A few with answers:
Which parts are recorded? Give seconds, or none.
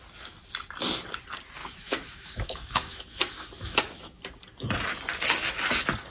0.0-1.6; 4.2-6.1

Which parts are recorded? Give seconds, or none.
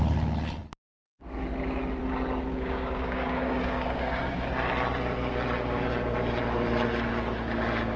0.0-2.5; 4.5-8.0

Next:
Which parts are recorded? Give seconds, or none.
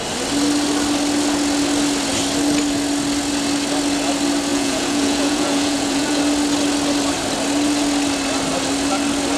0.0-4.5; 6.2-9.4